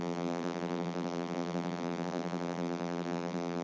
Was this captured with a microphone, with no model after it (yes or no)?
no